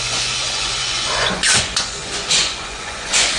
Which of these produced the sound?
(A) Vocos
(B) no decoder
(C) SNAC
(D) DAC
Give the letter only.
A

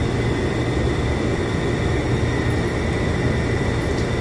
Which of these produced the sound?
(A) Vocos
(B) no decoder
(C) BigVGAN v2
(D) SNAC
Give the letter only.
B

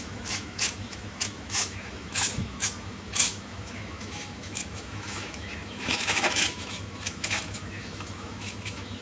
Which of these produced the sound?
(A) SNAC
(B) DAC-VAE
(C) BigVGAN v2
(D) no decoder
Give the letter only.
B